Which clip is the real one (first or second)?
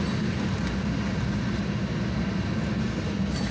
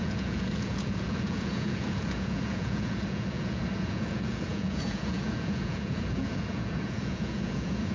first